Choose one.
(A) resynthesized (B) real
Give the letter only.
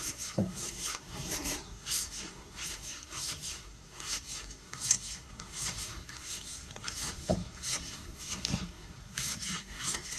A